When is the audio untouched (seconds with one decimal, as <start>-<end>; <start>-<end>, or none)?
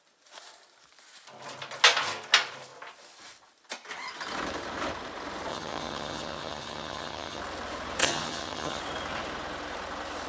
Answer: 0.0-5.5; 7.4-8.0; 8.8-10.3